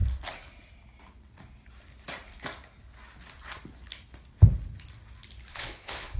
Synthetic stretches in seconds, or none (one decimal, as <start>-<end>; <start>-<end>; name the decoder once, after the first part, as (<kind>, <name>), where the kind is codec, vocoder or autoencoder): 5.5-6.2 (vocoder, Vocos)